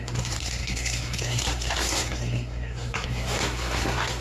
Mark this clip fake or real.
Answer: fake